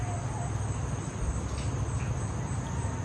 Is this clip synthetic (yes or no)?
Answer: no